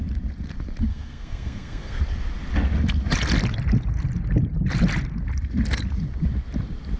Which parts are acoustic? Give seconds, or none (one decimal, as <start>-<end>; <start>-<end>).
0.0-0.9; 2.0-7.0